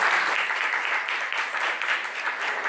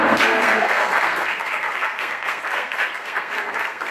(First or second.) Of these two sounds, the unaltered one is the first